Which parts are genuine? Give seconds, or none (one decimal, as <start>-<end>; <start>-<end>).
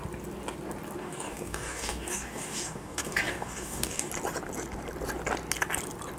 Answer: 0.0-1.0; 4.1-6.2